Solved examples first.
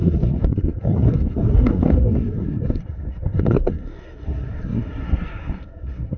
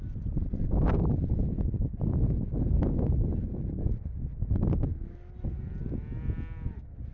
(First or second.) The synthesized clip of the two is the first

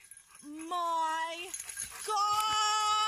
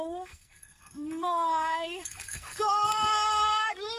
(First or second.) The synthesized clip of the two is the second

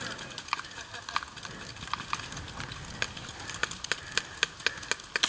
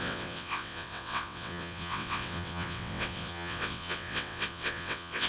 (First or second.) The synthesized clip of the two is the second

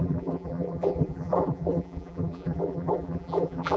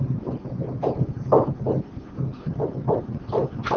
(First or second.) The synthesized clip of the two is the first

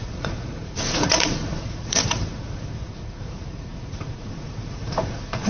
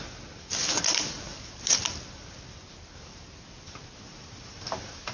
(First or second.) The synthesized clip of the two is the first